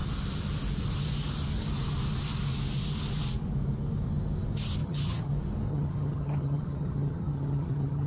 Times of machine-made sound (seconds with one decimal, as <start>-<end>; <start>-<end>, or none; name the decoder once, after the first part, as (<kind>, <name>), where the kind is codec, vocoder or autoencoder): 4.8-5.3 (vocoder, HiFi-GAN); 5.7-8.1